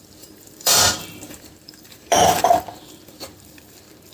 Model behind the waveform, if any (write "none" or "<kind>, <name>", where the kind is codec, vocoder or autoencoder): vocoder, BigVGAN v2